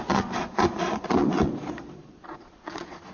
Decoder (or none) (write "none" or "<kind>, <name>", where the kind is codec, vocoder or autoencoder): vocoder, Vocos